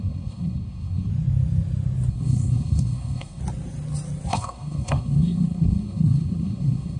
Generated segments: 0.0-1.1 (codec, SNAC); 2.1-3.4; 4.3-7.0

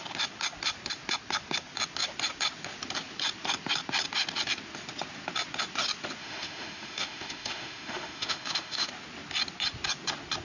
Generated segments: 6.2-8.9 (autoencoder, DAC-VAE)